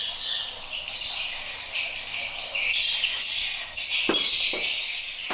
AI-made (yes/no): no